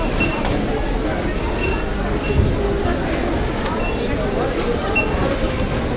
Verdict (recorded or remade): recorded